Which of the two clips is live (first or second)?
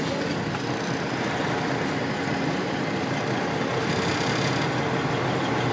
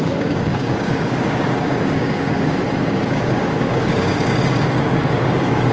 first